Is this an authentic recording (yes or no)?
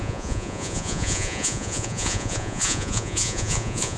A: no